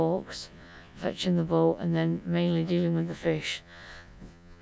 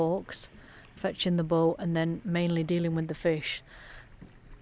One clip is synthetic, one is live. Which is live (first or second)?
second